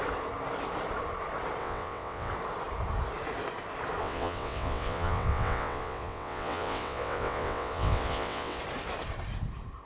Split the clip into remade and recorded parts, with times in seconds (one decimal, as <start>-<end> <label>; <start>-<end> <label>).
0.0-1.6 recorded; 1.6-2.3 remade; 2.3-4.0 recorded; 4.0-8.6 remade; 8.6-9.8 recorded